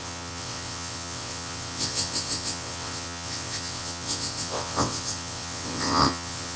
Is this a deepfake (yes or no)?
yes